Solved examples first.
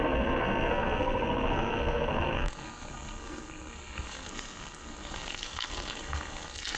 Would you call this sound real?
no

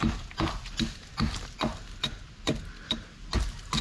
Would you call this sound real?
yes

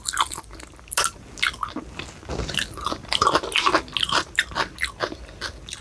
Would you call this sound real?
yes